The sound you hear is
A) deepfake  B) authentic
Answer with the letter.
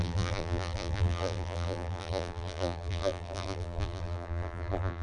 A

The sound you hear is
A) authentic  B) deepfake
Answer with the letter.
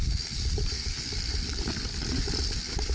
B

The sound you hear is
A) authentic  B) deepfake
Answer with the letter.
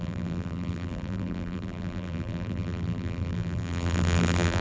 B